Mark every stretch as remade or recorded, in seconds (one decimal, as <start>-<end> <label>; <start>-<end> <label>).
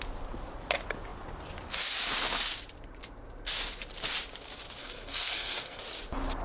0.0-4.8 recorded; 4.8-5.8 remade; 5.8-6.4 recorded